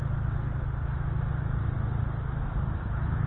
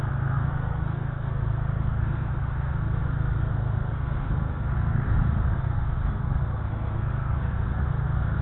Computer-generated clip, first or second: second